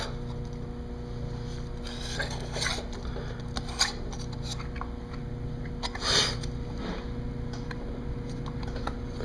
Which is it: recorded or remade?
recorded